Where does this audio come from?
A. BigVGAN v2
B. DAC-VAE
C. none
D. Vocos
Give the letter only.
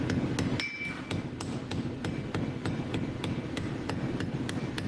C